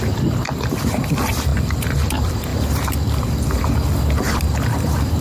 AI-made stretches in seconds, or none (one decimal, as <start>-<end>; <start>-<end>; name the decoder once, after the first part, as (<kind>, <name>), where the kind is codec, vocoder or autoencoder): 0.0-2.5 (vocoder, BigVGAN v2); 4.2-5.2